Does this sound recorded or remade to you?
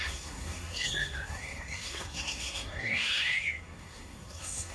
remade